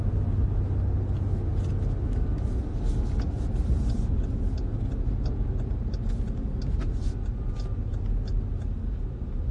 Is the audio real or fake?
real